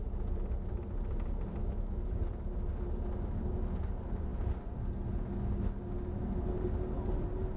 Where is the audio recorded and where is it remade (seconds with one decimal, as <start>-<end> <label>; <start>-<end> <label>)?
0.0-1.6 recorded; 1.6-2.1 remade; 2.1-7.6 recorded